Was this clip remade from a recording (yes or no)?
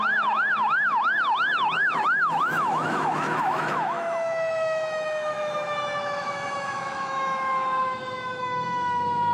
yes